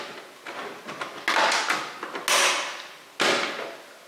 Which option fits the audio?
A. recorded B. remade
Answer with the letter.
A